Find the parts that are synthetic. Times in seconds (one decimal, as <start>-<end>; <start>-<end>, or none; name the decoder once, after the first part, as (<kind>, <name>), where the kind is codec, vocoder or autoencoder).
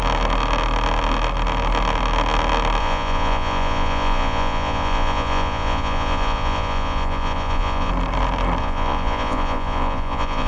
2.8-7.9 (vocoder, Vocos); 8.6-10.5